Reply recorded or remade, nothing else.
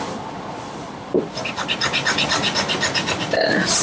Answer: recorded